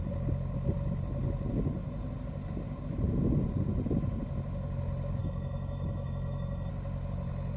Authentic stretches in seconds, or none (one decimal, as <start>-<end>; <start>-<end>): 0.0-5.2; 6.7-7.6